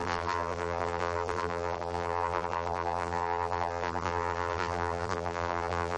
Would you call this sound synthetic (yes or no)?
yes